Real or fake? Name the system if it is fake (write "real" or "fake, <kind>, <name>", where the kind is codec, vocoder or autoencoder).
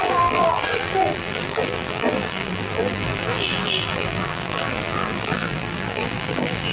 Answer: fake, vocoder, BigVGAN v2